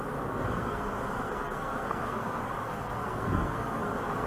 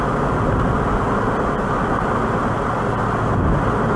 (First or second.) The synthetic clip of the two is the first